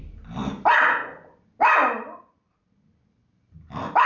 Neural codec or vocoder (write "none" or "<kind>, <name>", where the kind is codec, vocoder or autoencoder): none